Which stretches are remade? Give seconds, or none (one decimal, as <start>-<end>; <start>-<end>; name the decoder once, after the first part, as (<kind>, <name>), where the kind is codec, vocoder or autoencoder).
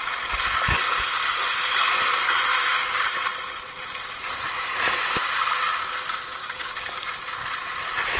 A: 2.5-3.2 (codec, DAC); 6.4-7.1